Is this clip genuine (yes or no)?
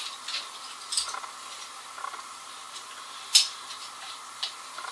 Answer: no